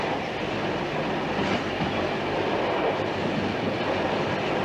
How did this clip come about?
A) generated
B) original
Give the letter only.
B